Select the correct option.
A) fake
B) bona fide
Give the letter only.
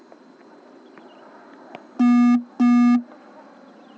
B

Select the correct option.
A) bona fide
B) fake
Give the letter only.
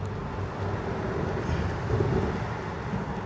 A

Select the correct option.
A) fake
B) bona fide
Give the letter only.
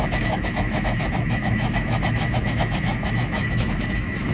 A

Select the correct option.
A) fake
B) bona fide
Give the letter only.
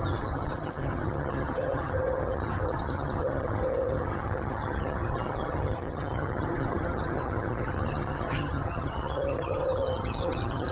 A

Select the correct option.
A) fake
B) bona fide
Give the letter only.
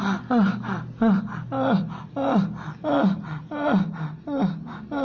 B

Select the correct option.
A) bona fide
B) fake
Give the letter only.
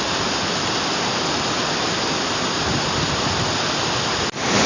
B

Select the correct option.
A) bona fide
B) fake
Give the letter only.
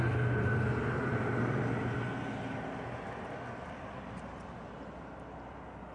A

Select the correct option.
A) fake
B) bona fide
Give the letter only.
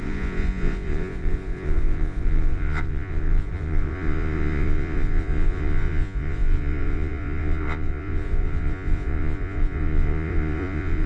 A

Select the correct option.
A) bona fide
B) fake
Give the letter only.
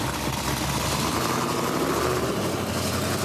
A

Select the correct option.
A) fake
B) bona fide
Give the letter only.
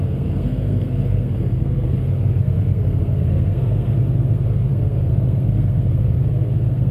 A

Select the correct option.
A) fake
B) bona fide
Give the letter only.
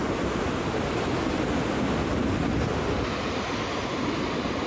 B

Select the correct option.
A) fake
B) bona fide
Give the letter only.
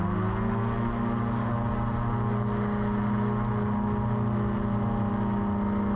B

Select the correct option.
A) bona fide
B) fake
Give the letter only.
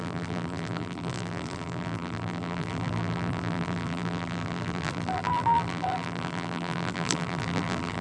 B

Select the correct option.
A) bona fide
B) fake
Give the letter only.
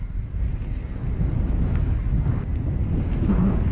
A